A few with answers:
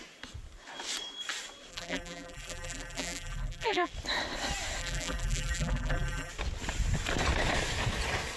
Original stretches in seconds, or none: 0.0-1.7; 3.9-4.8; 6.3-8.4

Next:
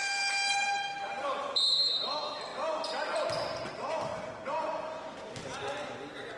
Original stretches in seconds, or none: 1.9-6.4

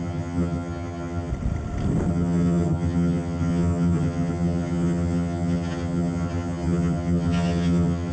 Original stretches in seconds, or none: 1.3-2.1

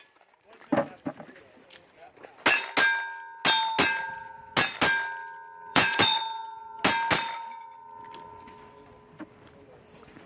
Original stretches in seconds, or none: 0.0-5.7; 6.2-10.3

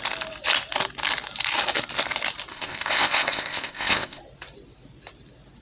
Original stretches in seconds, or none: 0.0-2.5; 4.2-5.6